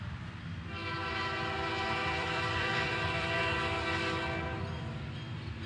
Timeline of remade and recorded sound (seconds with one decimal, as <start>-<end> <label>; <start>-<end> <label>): 0.0-2.0 recorded; 2.0-3.4 remade; 3.4-5.7 recorded